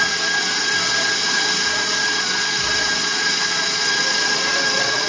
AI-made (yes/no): yes